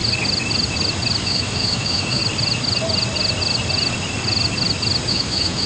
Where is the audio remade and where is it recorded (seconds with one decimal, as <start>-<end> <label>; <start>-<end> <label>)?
0.0-1.2 recorded; 1.2-2.2 remade; 2.2-5.1 recorded; 5.1-5.7 remade